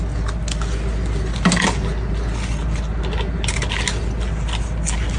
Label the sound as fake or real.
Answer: real